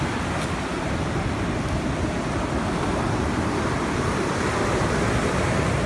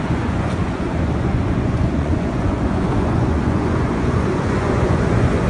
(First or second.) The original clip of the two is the first